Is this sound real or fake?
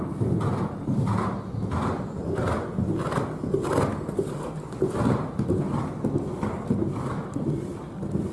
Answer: real